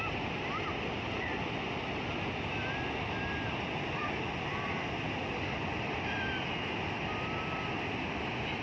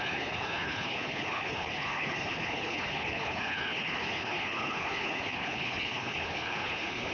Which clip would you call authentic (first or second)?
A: first